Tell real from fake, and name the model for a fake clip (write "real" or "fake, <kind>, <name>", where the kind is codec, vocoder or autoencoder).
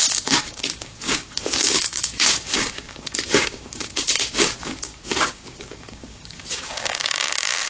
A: fake, codec, DAC